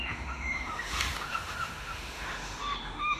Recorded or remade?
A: remade